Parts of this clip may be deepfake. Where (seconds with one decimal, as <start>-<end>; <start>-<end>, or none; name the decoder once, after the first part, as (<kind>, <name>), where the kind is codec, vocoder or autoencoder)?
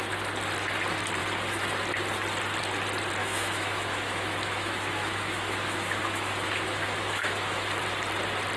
3.2-7.7 (autoencoder, DAC-VAE)